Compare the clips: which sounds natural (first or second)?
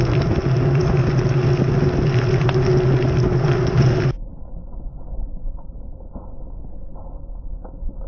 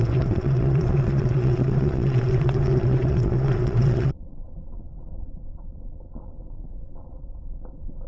first